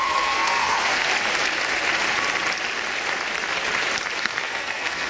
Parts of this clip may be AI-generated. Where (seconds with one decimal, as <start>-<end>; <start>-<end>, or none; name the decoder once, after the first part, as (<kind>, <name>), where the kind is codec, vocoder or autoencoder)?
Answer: 0.0-1.1 (codec, SNAC); 4.2-5.1

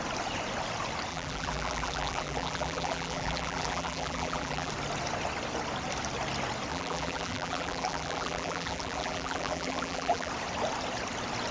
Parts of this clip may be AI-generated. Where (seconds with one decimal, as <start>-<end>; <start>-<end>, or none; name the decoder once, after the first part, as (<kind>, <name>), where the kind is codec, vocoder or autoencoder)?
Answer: 1.1-4.7 (vocoder, BigVGAN v2); 6.7-10.3

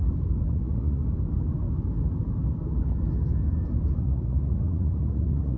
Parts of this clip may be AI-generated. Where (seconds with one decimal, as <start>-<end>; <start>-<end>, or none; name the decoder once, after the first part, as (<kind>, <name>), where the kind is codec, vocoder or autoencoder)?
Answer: 0.5-1.0 (vocoder, Vocos); 4.0-5.6

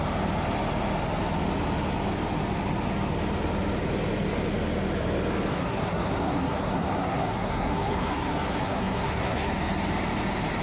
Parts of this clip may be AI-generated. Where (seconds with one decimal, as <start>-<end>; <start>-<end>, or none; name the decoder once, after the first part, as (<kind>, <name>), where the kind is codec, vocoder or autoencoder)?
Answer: 5.5-9.5 (codec, SNAC)

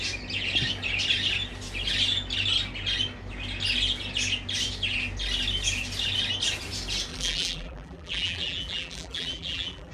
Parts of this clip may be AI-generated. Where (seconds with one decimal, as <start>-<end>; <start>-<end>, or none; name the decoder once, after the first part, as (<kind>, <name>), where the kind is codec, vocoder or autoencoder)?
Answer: 7.1-9.9 (vocoder, BigVGAN v2)

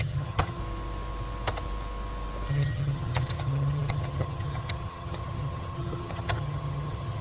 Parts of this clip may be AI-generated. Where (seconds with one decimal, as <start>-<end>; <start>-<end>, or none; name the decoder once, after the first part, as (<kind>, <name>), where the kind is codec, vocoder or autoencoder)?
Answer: 0.0-0.6 (vocoder, HiFi-GAN); 2.5-7.2

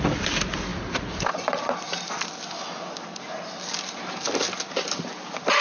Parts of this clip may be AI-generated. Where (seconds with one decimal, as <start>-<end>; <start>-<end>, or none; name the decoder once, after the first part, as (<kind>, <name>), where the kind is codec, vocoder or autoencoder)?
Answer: none